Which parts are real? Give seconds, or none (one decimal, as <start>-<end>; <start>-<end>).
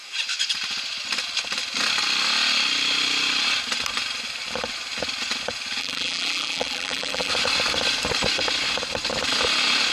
0.0-5.8; 7.3-9.9